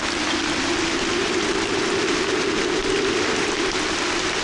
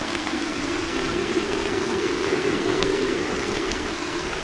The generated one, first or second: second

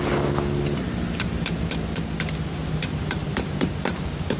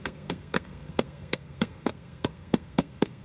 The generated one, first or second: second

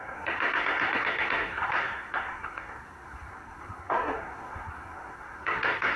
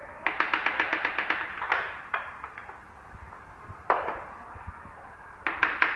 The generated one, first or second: first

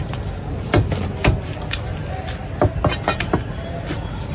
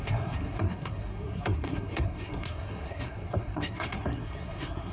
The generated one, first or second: second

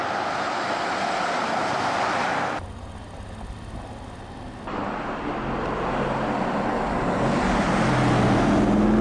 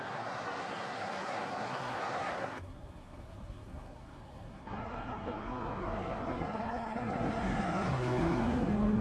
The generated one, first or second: second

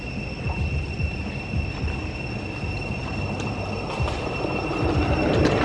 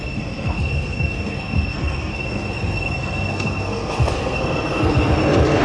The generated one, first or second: second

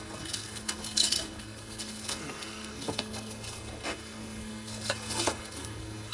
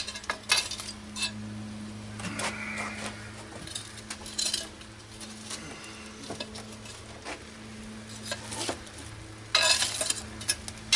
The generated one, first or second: first